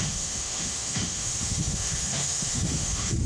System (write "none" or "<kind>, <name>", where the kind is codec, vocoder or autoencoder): autoencoder, DAC-VAE